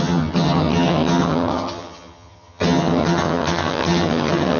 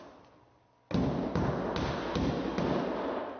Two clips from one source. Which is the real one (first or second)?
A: second